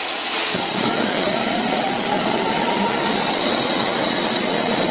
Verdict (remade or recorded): remade